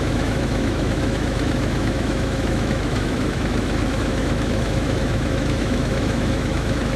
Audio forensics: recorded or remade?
remade